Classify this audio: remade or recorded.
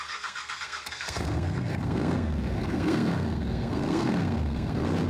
remade